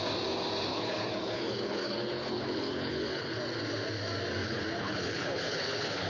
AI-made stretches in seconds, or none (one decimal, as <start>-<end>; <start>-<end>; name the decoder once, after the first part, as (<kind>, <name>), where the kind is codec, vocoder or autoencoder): 0.7-3.4 (codec, HILCodec); 4.4-6.1